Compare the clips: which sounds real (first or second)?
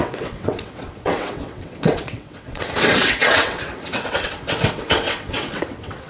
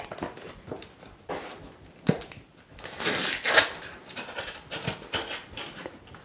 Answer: second